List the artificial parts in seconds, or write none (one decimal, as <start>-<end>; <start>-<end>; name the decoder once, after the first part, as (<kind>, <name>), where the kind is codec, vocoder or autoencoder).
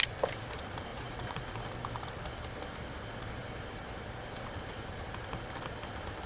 0.9-1.4 (vocoder, Vocos)